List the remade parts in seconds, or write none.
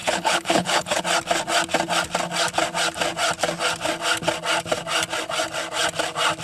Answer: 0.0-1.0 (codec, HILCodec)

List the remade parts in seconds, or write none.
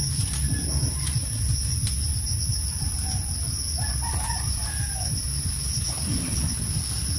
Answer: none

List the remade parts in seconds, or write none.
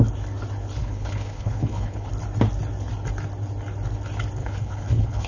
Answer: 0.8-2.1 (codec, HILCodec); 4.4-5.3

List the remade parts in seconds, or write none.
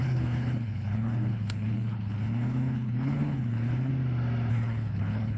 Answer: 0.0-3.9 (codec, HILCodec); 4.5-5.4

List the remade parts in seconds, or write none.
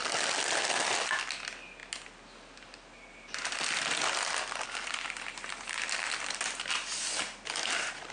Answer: none